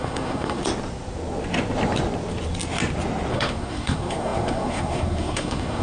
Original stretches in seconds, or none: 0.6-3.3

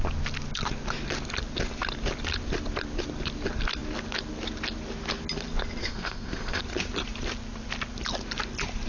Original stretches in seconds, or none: 0.0-5.8; 6.6-8.9

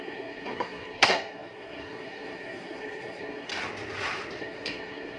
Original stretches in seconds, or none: 3.5-4.4

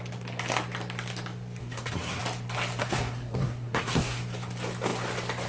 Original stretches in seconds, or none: 0.0-1.6; 2.2-2.8; 4.2-5.5

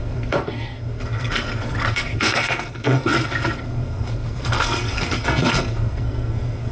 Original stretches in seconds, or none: none

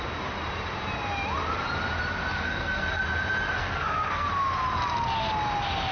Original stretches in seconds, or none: 0.0-2.3; 3.0-3.6; 4.3-5.9

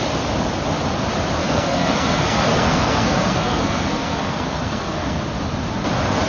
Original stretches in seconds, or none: 0.0-1.4; 5.2-6.3